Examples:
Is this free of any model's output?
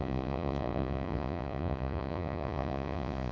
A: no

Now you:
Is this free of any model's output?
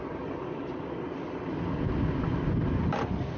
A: yes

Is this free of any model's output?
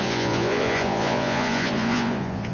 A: no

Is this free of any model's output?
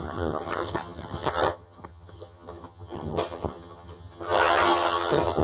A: no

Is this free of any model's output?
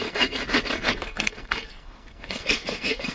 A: no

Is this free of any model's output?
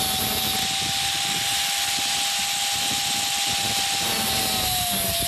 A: yes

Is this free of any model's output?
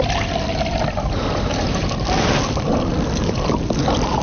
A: yes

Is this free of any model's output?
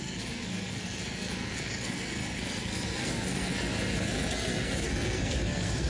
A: no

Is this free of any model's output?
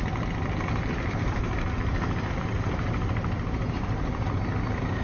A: yes